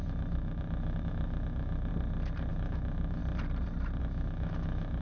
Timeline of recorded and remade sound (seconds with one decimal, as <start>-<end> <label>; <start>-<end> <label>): 0.0-1.9 remade; 1.9-2.5 recorded; 2.5-3.2 remade; 3.2-4.0 recorded; 4.0-5.0 remade